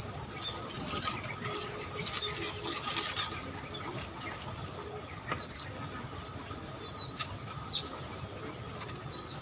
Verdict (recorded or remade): recorded